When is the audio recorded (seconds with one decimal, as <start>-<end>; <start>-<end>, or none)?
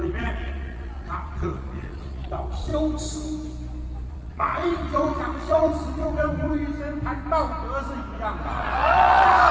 2.7-4.1; 6.6-8.5